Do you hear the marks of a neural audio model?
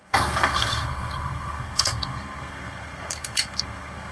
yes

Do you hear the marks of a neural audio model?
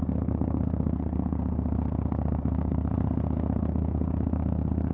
yes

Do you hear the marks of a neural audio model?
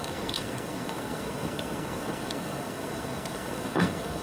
yes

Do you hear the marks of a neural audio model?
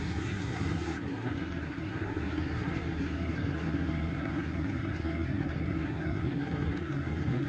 yes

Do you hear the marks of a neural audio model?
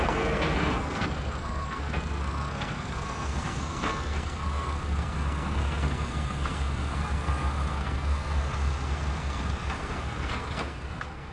yes